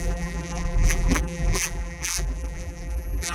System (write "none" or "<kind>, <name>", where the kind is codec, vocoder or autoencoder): vocoder, BigVGAN v2